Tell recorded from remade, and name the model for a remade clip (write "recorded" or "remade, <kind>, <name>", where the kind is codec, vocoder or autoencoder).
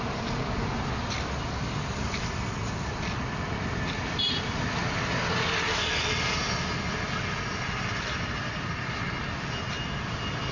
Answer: recorded